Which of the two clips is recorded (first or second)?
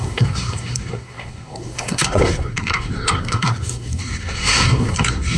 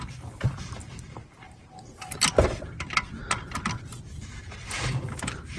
second